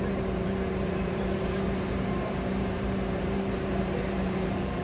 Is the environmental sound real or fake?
fake